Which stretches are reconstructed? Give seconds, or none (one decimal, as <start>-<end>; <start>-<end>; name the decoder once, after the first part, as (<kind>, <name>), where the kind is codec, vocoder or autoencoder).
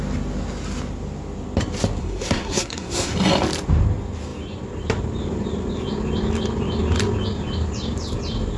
2.0-3.1 (codec, SNAC)